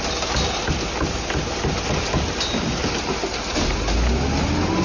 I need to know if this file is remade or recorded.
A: recorded